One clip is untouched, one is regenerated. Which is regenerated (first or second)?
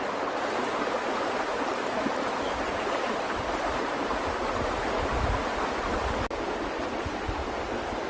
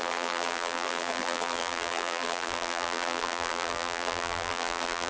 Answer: second